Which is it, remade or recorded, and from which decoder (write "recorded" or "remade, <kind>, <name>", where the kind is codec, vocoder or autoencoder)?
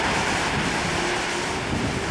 recorded